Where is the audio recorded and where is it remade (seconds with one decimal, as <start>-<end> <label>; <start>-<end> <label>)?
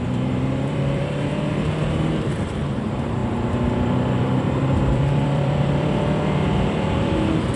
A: 0.0-7.6 remade